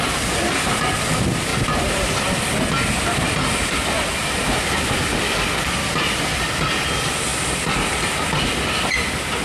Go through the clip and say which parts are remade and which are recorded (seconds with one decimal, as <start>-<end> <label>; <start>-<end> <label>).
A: 0.0-9.4 recorded